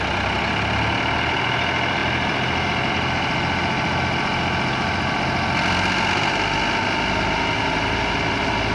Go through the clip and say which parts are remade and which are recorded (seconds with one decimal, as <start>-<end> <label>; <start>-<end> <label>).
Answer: 0.0-8.7 recorded